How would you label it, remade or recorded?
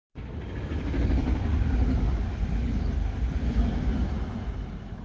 recorded